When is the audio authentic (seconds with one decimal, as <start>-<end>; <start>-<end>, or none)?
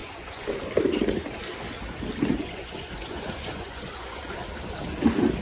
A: 0.5-2.3; 4.2-5.4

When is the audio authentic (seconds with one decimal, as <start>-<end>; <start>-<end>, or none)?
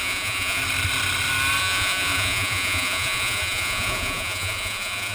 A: 0.6-1.6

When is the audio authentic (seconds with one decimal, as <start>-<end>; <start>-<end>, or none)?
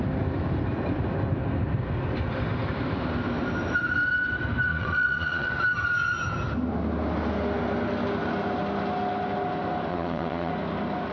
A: 0.0-4.7; 5.5-9.9; 10.5-11.1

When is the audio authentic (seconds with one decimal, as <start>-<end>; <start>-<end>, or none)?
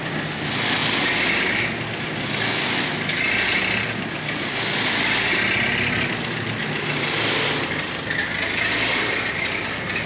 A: 0.0-10.1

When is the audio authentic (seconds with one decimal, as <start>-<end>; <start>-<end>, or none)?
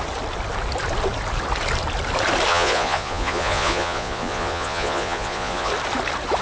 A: 0.0-2.5; 5.7-6.4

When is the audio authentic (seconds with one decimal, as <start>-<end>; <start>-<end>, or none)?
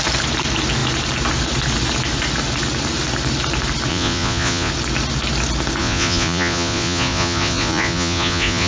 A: 0.0-3.9; 4.7-5.8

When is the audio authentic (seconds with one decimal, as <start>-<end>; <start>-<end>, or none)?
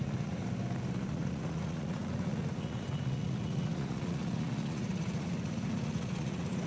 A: 0.4-1.1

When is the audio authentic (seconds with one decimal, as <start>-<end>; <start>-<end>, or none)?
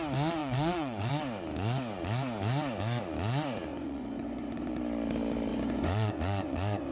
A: 0.0-0.4; 1.1-3.7; 4.7-5.5